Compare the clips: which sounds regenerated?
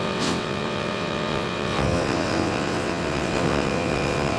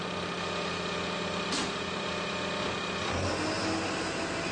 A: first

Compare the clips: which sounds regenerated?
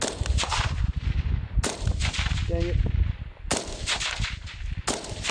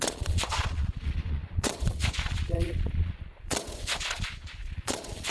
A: second